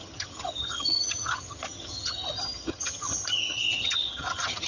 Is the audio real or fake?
fake